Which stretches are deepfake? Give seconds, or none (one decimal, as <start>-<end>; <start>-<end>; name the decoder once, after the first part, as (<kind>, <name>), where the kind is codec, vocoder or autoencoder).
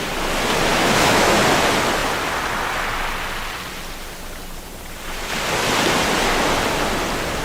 0.7-1.4 (autoencoder, DAC-VAE)